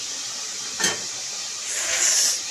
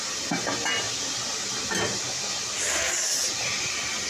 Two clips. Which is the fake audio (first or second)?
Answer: first